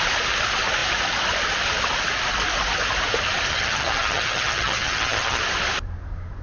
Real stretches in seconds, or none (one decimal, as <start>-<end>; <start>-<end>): 0.0-3.5; 5.4-6.4